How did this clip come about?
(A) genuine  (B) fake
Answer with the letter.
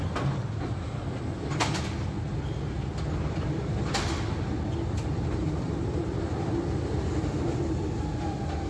A